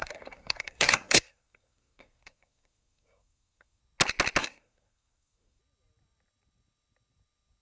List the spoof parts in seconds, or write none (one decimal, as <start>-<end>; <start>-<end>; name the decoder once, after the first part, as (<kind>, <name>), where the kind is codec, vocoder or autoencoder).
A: 0.0-3.8 (codec, SNAC); 4.4-5.6

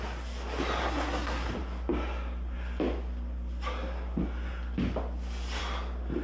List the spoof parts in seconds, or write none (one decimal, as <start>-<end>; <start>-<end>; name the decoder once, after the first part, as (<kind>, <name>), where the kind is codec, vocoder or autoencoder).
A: 0.8-1.5 (codec, SNAC)